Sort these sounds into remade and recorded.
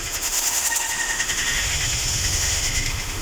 remade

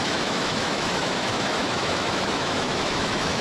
remade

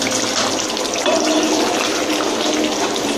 recorded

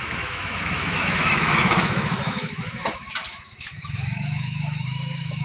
remade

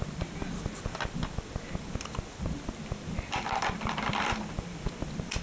recorded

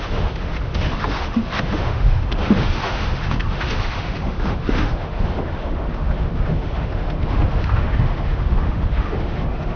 remade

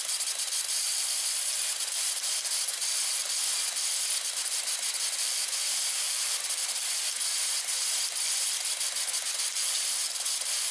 recorded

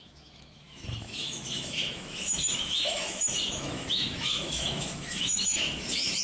remade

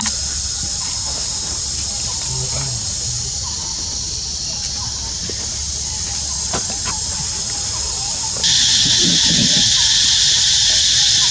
recorded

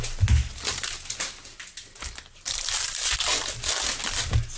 recorded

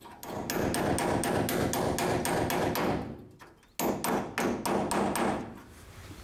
recorded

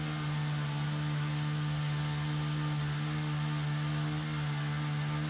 recorded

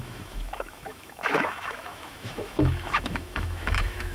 remade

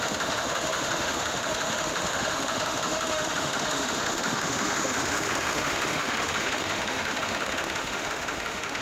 remade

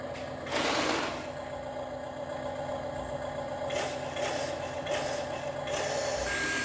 recorded